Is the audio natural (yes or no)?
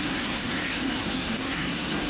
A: no